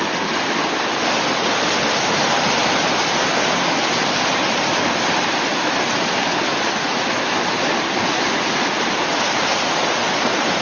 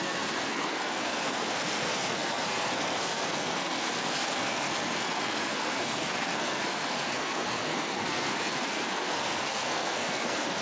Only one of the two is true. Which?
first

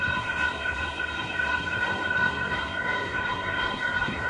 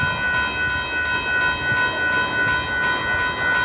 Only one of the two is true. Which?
second